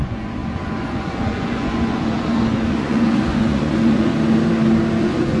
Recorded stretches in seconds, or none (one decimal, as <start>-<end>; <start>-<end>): 4.1-5.0